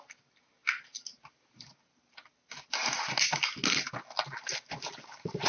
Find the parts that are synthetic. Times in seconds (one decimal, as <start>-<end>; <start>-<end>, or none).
none